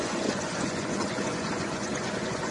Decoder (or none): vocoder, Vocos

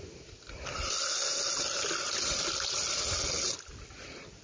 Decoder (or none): none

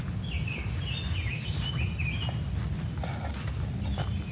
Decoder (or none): none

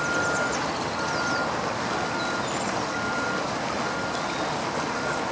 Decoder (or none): none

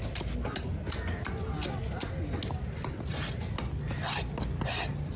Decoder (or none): none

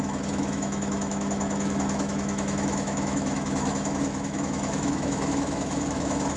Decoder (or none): autoencoder, DAC-VAE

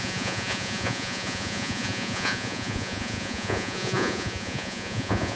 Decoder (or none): vocoder, Vocos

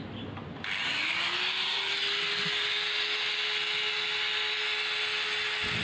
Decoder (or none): none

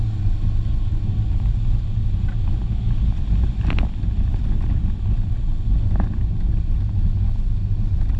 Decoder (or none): none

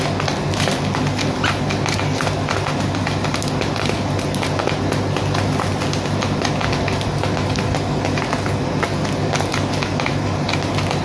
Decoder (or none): none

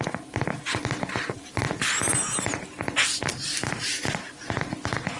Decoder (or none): none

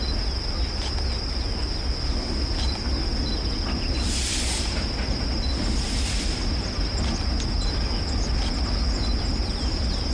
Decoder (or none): none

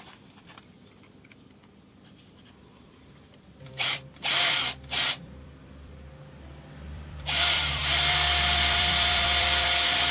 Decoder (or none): vocoder, BigVGAN v2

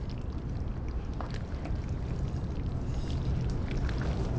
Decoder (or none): none